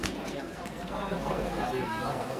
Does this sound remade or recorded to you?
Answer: remade